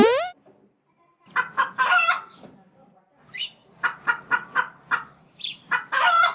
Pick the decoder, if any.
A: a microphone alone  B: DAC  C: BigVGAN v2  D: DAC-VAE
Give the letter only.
C